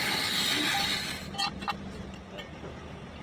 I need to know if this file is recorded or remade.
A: recorded